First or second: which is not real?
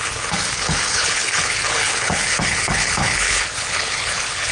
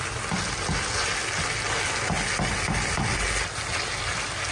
first